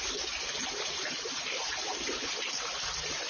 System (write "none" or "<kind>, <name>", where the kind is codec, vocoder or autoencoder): none